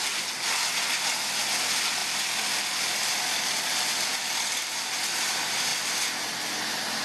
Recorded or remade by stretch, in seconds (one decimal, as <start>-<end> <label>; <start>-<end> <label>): 0.0-7.0 recorded